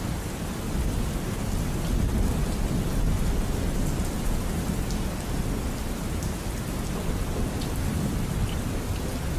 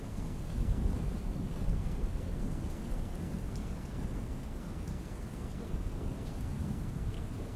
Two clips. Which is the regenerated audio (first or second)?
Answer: second